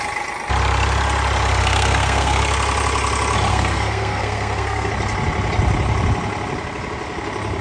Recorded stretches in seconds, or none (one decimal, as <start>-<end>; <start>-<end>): 0.0-1.6; 2.4-3.5; 4.9-7.6